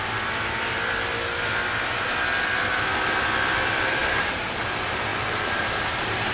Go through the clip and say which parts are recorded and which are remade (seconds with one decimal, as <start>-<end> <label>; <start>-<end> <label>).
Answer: 0.0-4.0 recorded; 4.0-4.6 remade; 4.6-5.1 recorded; 5.1-6.3 remade